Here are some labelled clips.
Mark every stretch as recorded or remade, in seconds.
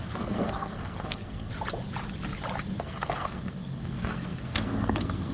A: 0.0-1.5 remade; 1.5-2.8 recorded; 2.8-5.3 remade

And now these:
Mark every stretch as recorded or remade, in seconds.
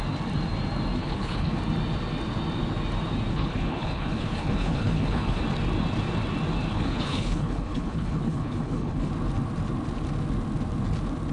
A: 0.0-1.0 recorded; 1.0-1.6 remade; 1.6-3.3 recorded; 3.3-5.4 remade; 5.4-6.7 recorded; 6.7-9.1 remade; 9.1-11.3 recorded